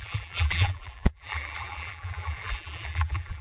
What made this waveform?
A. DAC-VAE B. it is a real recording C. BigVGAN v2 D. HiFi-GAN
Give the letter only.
C